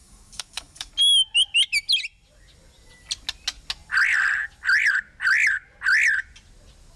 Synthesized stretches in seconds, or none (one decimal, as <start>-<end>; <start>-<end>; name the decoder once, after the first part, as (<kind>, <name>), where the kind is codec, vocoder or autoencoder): 0.0-0.9 (codec, DAC)